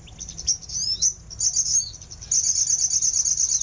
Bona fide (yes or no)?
yes